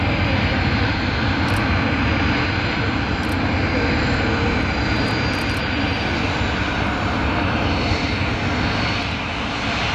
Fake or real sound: real